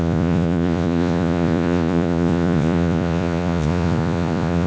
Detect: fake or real fake